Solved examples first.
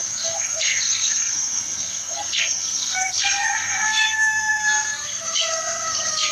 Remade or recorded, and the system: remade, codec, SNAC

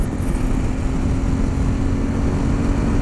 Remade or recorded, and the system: recorded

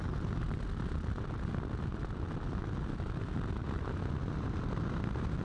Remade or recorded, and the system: recorded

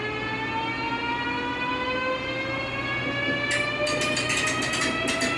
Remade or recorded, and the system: recorded